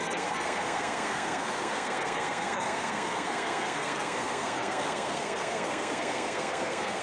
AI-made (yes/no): yes